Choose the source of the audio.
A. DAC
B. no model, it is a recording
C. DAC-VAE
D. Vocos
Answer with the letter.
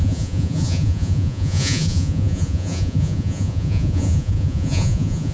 D